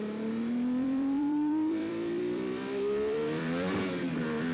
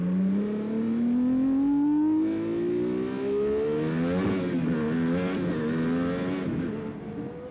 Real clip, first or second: second